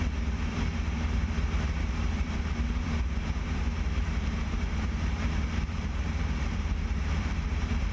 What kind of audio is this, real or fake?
fake